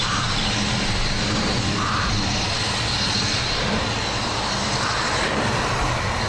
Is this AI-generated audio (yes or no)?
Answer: no